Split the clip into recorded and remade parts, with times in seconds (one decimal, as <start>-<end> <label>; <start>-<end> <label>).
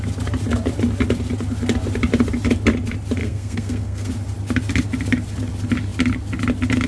0.0-3.2 recorded; 3.2-4.1 remade; 4.1-6.9 recorded